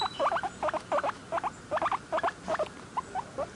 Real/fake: real